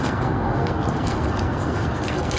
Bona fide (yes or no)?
no